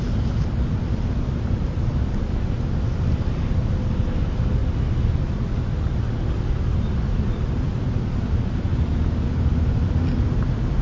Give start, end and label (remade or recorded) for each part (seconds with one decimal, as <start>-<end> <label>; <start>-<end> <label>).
0.0-10.8 recorded

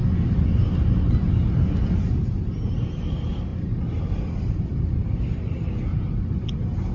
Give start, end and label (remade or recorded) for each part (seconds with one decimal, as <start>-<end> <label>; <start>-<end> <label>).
0.0-3.5 recorded; 3.5-6.2 remade; 6.2-6.9 recorded